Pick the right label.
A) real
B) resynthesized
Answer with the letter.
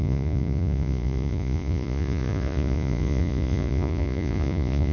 B